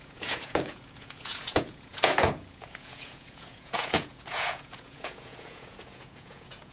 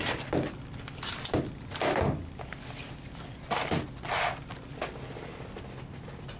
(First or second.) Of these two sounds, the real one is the second